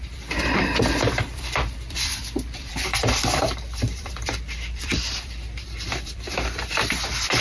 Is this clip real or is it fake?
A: fake